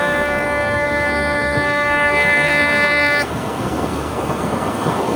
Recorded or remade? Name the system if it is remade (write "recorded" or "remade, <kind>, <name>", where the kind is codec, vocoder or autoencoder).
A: remade, codec, SNAC